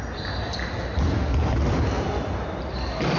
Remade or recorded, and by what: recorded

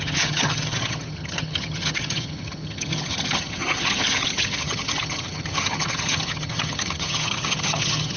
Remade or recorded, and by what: remade, vocoder, HiFi-GAN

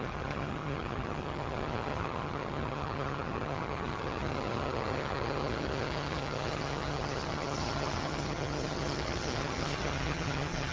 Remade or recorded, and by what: remade, vocoder, HiFi-GAN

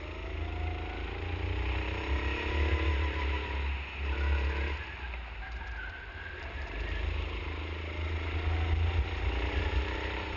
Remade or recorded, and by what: recorded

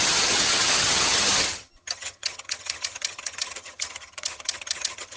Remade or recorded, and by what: remade, vocoder, HiFi-GAN